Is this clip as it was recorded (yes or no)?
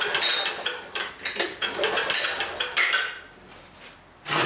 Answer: yes